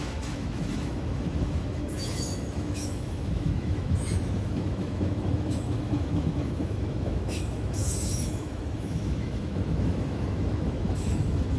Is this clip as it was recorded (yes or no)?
no